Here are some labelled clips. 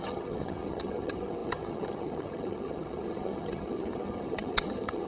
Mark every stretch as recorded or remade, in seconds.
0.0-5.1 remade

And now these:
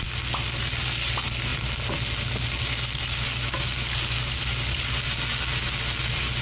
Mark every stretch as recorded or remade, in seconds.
0.0-6.4 recorded

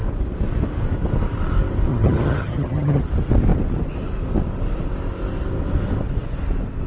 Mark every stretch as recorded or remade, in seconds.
0.0-1.9 recorded; 1.9-3.0 remade; 3.0-6.9 recorded

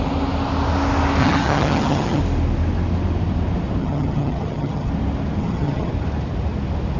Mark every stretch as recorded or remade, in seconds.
0.0-1.2 recorded; 1.2-2.2 remade; 2.2-3.8 recorded; 3.8-4.9 remade; 4.9-5.4 recorded; 5.4-5.9 remade; 5.9-7.0 recorded

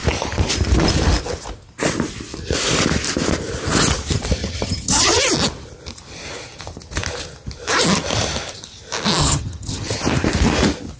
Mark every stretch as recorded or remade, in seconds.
0.0-4.4 recorded; 4.4-5.2 remade; 5.2-9.2 recorded; 9.2-10.0 remade; 10.0-11.0 recorded

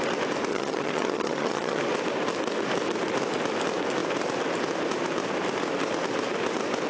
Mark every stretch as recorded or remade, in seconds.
0.0-0.5 recorded; 0.5-1.8 remade; 1.8-6.9 recorded